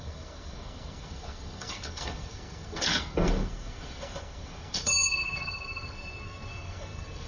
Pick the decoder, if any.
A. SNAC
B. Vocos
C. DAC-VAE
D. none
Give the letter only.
A